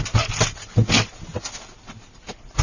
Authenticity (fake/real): real